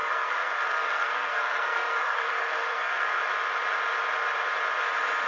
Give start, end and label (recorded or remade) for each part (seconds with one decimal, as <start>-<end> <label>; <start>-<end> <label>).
0.0-3.2 remade; 3.2-5.3 recorded